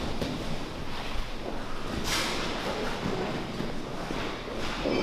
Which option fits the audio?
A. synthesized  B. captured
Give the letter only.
B